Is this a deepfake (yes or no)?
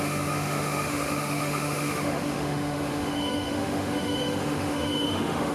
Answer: yes